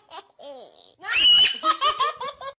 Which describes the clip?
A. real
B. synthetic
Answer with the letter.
A